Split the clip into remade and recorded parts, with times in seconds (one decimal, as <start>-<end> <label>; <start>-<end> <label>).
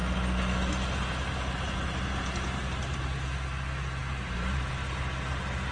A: 0.0-5.7 recorded